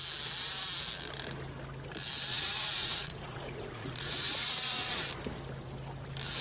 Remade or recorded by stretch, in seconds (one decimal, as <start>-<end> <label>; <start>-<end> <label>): 0.0-2.3 recorded; 2.3-5.0 remade; 5.0-6.4 recorded